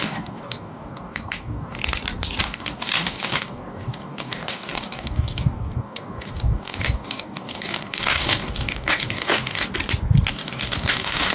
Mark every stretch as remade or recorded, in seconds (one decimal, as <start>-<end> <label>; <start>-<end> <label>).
0.0-1.8 remade; 1.8-2.4 recorded; 2.4-9.7 remade; 9.7-10.3 recorded; 10.3-11.3 remade